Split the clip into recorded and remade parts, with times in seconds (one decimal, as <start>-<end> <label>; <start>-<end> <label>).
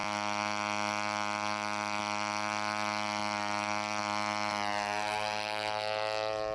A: 0.0-6.5 recorded